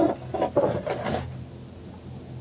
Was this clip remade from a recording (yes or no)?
no